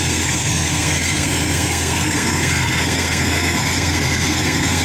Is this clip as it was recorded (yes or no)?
no